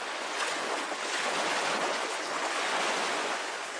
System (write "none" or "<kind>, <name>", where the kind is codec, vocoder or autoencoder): vocoder, Vocos